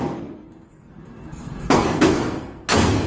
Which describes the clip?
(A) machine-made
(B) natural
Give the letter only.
A